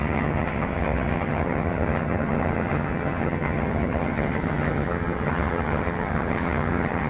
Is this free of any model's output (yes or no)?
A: no